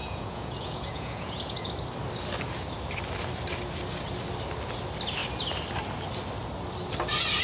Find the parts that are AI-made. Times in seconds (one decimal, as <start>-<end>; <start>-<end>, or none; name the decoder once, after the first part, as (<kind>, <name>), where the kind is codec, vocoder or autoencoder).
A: 0.0-1.7 (vocoder, Vocos)